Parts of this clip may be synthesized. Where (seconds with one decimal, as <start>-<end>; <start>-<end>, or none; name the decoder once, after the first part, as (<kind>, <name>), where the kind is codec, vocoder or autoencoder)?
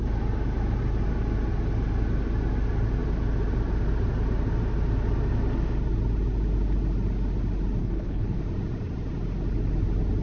7.8-8.4 (codec, HILCodec)